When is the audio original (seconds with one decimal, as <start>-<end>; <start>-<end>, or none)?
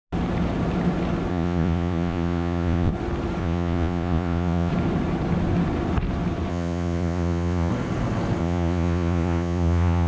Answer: 0.0-1.3; 2.9-3.4; 4.7-6.5; 7.7-8.4